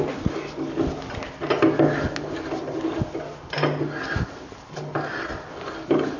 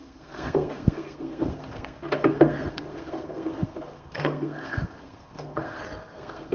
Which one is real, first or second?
first